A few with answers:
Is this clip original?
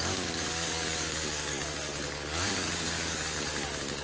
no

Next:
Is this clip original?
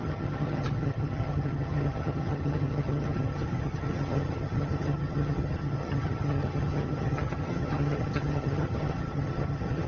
no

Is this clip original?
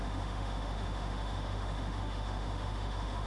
no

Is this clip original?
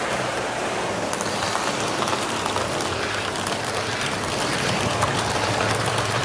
yes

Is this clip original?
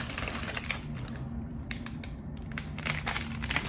no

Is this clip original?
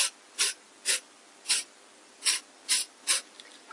yes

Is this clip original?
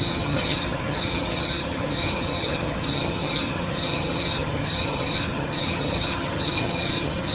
no